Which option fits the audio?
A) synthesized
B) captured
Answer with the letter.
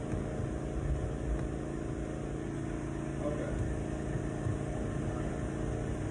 B